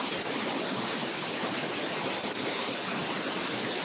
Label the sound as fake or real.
real